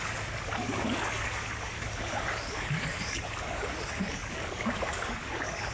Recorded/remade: remade